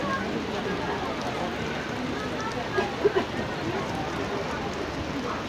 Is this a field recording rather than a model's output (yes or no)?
yes